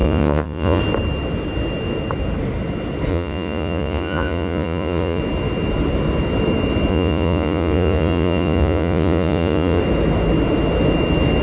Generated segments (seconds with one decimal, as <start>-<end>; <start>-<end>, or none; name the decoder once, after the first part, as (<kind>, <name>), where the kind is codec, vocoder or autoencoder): 0.0-0.8 (vocoder, Vocos); 3.1-5.2; 6.9-9.8